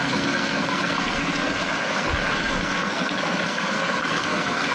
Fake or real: fake